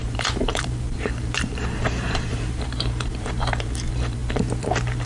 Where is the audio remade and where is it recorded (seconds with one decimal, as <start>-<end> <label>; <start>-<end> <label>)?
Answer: 0.0-4.2 remade; 4.2-5.1 recorded